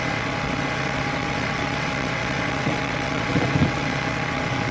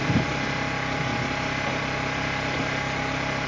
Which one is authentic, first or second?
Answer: second